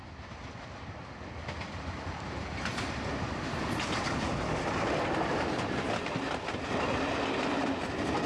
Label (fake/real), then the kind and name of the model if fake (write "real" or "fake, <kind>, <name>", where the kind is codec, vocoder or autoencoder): real